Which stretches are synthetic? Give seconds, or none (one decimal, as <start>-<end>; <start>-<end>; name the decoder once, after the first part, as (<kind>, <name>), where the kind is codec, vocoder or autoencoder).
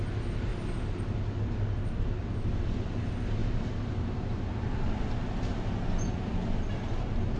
none